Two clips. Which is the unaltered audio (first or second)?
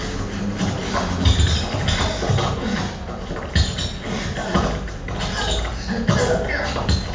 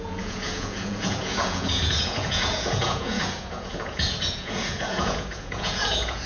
first